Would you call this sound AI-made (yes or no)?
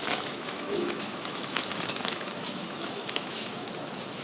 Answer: yes